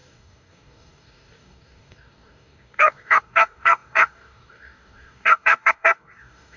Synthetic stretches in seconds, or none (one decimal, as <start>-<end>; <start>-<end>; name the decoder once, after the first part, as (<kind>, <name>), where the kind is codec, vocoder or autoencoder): 0.0-6.6 (codec, DAC)

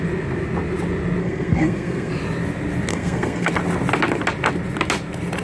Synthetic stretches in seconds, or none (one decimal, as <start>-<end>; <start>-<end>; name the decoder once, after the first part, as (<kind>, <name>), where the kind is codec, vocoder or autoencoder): 1.2-2.1 (codec, SNAC); 2.9-3.5

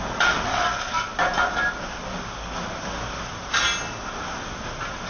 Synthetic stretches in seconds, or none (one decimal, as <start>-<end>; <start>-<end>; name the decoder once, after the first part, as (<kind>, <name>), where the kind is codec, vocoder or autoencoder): none

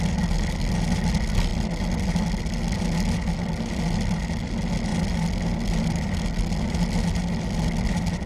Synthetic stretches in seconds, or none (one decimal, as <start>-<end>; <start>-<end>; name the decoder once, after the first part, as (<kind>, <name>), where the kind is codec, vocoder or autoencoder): none